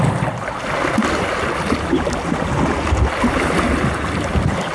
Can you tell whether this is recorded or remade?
recorded